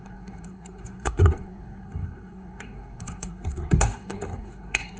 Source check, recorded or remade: remade